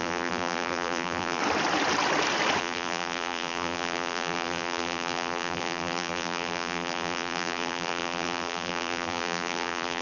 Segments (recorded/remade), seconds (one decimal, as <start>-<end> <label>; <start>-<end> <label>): 0.0-1.4 remade; 1.4-2.6 recorded; 2.6-10.0 remade